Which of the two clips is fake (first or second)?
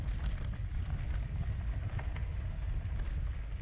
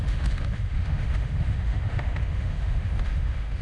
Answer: second